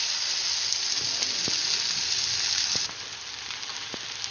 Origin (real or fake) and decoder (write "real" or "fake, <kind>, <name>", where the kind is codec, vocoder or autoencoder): real